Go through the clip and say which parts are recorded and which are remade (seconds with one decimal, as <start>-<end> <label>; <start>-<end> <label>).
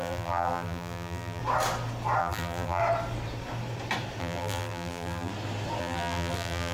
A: 0.0-1.4 remade; 1.4-2.2 recorded; 2.2-2.8 remade; 2.8-4.2 recorded; 4.2-5.3 remade; 5.3-5.8 recorded; 5.8-6.7 remade